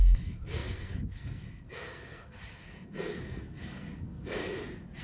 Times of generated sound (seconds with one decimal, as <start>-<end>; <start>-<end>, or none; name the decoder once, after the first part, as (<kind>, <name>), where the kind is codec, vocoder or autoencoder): 0.0-4.4 (codec, SNAC)